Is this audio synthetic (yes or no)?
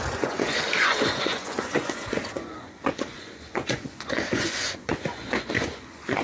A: yes